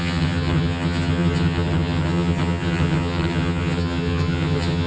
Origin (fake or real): fake